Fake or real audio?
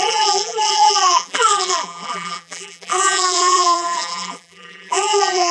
fake